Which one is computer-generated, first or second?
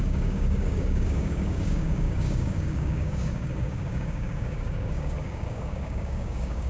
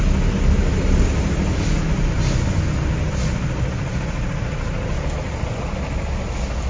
first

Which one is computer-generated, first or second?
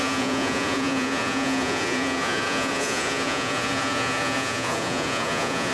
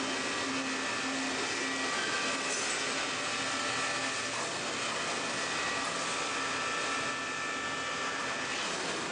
first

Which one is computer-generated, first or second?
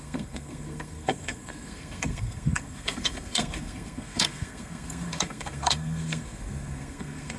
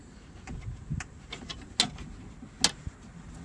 first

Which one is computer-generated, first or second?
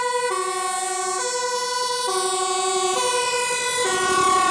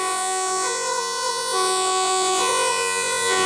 second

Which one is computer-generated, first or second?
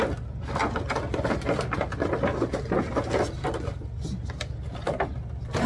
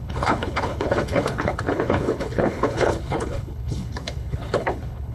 second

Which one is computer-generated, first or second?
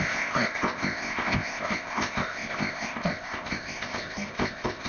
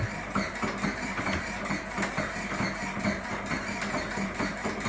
first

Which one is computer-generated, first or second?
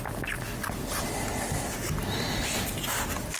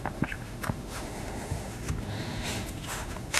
second